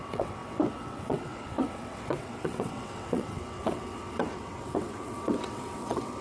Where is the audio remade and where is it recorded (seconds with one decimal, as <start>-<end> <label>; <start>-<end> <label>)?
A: 0.0-6.2 remade